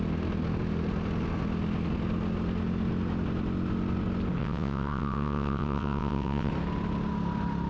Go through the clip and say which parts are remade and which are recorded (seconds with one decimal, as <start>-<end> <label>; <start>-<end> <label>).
0.0-4.4 recorded; 4.4-6.5 remade; 6.5-7.7 recorded